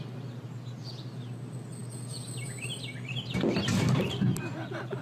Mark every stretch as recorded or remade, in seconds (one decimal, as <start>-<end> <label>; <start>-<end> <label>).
0.0-5.0 recorded